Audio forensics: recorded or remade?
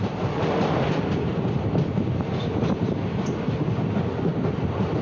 remade